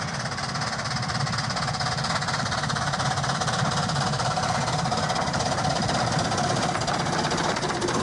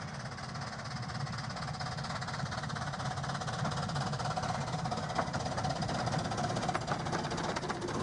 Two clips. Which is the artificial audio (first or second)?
first